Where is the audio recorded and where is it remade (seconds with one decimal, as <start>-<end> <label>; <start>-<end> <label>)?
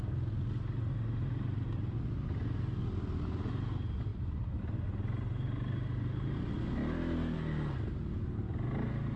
0.0-4.1 recorded; 4.1-4.6 remade; 4.6-9.2 recorded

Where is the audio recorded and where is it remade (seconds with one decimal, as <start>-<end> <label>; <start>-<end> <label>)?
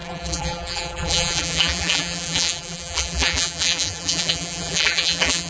0.0-5.5 remade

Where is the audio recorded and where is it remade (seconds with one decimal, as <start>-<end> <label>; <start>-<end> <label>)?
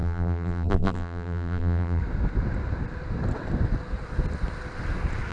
0.0-2.0 remade; 2.0-5.3 recorded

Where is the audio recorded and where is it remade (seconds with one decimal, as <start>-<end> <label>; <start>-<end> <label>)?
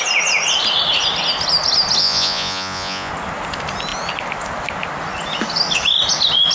0.0-2.0 recorded; 2.0-3.1 remade; 3.1-6.5 recorded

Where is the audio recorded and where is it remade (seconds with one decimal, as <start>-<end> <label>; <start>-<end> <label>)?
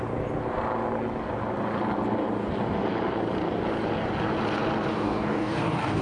0.0-4.9 recorded; 4.9-6.0 remade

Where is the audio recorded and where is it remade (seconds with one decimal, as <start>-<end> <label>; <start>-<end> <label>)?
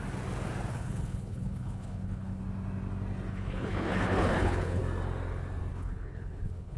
0.0-0.7 recorded; 0.7-2.4 remade; 2.4-3.3 recorded; 3.3-4.8 remade; 4.8-5.7 recorded; 5.7-6.8 remade